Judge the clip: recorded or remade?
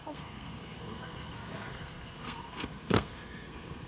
remade